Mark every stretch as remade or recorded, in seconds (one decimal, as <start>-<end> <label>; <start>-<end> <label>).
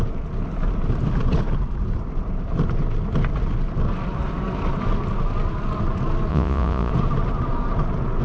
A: 0.0-6.3 recorded; 6.3-6.9 remade; 6.9-8.2 recorded